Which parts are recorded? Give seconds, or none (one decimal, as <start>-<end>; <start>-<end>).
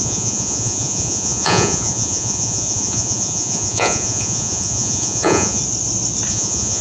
5.6-6.3